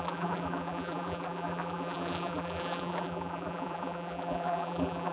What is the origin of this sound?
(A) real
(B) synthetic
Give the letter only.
B